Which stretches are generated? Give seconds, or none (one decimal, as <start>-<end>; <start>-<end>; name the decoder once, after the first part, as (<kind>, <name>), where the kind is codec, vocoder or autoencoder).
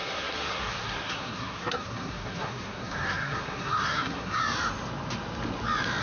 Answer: 0.0-4.4 (codec, SNAC)